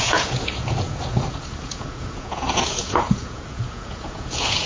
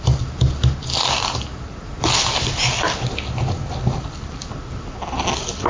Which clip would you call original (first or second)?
second